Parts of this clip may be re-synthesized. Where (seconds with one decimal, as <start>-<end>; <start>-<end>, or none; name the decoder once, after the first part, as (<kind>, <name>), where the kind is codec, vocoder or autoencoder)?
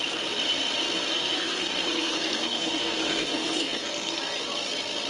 1.1-4.2 (codec, SNAC)